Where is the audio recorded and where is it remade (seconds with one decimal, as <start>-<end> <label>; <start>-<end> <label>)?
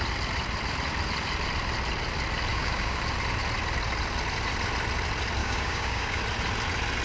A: 0.0-2.5 recorded; 2.5-3.0 remade; 3.0-5.4 recorded; 5.4-6.2 remade; 6.2-7.0 recorded